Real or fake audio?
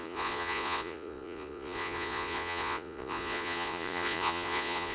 fake